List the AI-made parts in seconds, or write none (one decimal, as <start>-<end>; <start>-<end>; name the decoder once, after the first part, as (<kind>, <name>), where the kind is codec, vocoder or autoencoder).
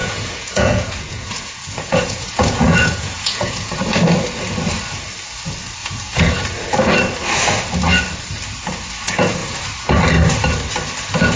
0.0-3.7 (vocoder, Vocos); 5.8-6.3